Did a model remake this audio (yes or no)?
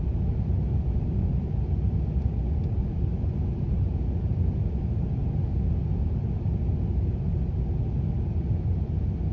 no